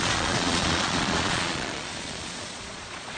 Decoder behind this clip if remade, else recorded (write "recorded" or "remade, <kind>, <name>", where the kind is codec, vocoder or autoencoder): remade, vocoder, Vocos